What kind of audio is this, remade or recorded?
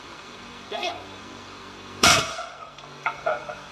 remade